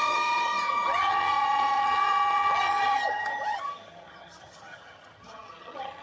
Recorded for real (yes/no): no